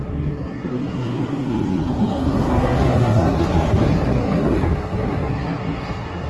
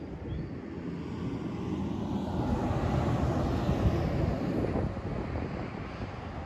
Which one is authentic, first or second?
second